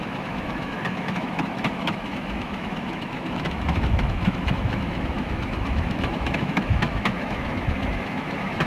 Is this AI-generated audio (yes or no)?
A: yes